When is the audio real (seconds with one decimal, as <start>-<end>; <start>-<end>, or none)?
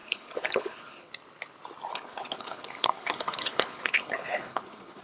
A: 1.1-1.9